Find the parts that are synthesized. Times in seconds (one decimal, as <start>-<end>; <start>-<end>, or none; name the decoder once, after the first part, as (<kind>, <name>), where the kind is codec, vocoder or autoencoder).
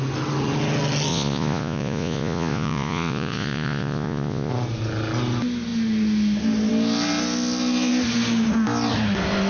1.1-4.5 (vocoder, Vocos)